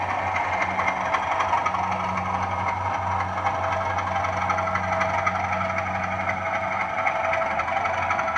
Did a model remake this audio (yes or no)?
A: no